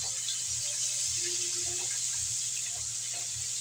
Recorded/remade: recorded